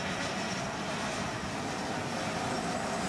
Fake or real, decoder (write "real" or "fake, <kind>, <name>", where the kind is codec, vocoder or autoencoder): fake, vocoder, BigVGAN v2